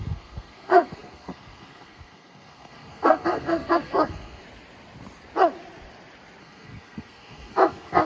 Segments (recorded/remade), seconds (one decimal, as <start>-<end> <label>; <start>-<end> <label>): 0.0-4.4 remade; 4.4-6.4 recorded; 6.4-8.1 remade